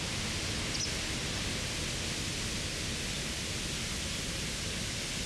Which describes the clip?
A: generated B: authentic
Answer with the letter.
B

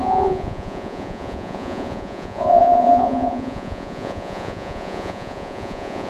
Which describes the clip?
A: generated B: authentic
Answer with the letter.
A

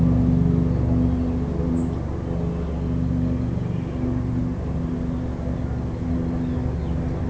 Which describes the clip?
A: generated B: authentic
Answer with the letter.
B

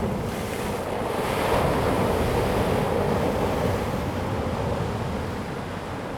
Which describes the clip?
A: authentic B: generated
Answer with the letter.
A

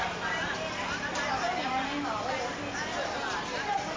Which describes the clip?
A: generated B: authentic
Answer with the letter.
B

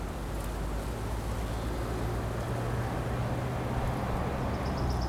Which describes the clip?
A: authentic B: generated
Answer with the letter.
A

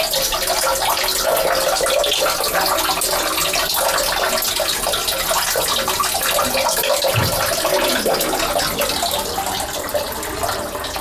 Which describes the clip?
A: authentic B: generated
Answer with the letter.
A